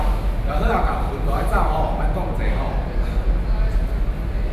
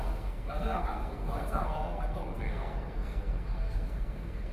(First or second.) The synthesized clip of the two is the second